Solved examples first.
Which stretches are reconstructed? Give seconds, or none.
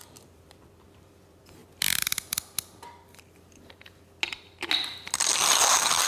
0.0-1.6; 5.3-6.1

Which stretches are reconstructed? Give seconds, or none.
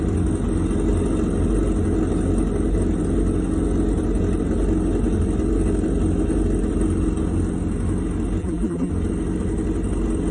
8.4-8.9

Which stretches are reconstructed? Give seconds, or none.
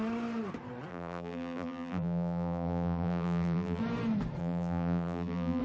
0.9-3.8; 4.4-5.6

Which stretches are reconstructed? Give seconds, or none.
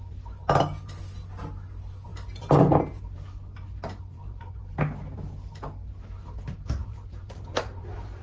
4.0-4.7; 6.8-8.2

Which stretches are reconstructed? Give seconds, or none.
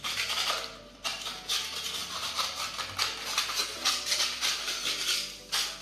none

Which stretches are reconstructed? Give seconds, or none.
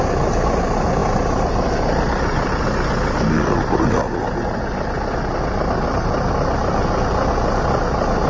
1.0-2.6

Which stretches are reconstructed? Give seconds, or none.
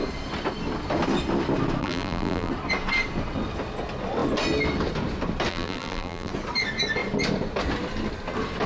1.8-2.5; 5.5-6.3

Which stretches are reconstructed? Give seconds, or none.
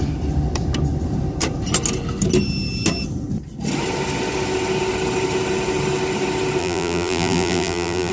6.6-8.1